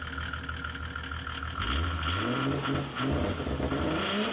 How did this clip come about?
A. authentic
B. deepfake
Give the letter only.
A